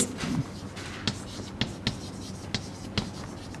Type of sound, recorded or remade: recorded